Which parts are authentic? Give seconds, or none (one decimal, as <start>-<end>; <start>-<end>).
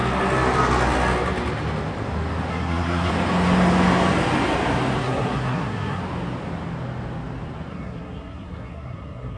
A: 0.0-2.5; 3.1-5.0; 6.0-7.7